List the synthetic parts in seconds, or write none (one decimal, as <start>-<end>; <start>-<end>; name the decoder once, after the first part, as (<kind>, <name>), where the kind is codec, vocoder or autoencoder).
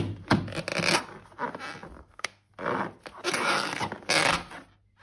2.0-2.5 (codec, SNAC)